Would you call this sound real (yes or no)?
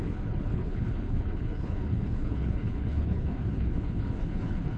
no